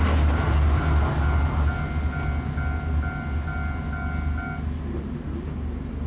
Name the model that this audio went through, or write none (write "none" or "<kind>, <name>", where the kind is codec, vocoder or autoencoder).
none